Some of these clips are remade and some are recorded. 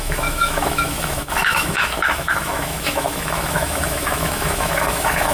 remade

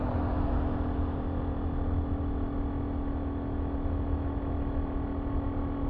recorded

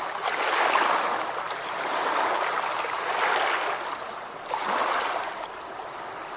recorded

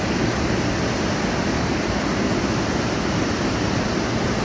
recorded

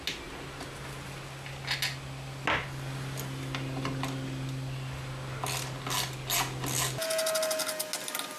recorded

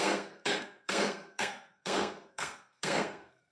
remade